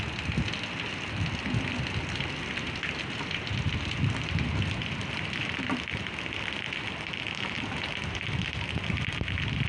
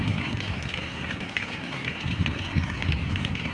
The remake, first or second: second